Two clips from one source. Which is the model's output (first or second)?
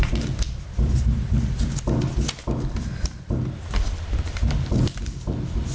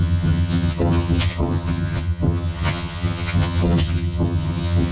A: second